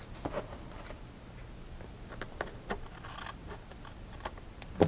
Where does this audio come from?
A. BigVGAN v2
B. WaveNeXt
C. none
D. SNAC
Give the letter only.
C